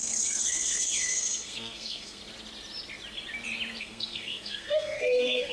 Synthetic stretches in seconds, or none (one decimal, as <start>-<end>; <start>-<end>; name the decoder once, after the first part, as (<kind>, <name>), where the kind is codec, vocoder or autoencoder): 0.0-2.2 (codec, SNAC); 3.8-5.5